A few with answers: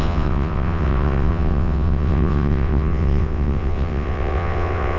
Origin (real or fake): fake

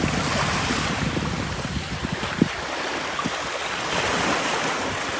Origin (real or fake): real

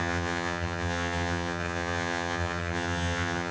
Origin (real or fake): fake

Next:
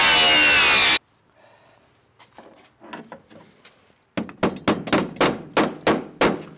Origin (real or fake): real